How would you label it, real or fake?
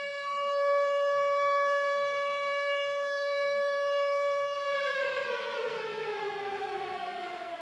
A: fake